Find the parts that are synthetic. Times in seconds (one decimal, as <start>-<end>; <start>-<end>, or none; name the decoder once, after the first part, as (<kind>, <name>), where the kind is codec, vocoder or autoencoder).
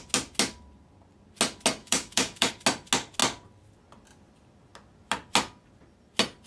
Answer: 1.8-2.5 (autoencoder, DAC-VAE)